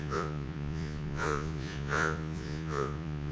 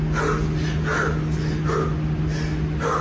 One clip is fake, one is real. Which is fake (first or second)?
first